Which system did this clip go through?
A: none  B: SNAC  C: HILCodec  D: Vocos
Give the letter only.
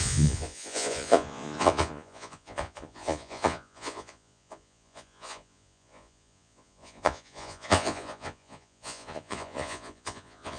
D